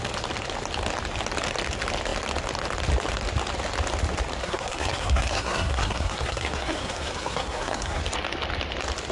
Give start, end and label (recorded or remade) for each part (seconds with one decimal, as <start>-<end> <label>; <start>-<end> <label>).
0.0-4.4 recorded; 4.4-8.0 remade; 8.0-9.1 recorded